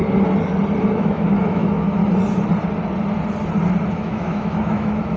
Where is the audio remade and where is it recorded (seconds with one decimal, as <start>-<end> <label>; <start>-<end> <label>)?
0.0-0.8 recorded; 0.8-2.0 remade; 2.0-3.9 recorded; 3.9-5.2 remade